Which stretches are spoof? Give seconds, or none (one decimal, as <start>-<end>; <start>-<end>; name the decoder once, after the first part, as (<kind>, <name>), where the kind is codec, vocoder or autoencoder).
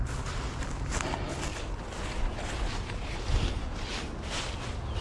none